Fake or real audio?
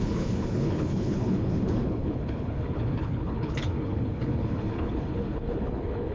fake